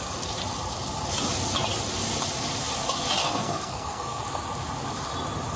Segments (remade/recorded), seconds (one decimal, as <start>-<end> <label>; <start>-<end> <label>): 0.0-3.2 recorded; 3.2-4.2 remade; 4.2-5.6 recorded